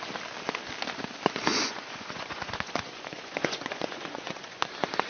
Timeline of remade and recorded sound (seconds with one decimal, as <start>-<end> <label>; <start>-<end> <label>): 0.0-1.5 recorded; 1.5-4.6 remade; 4.6-5.1 recorded